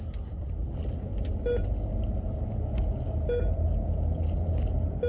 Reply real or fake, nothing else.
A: real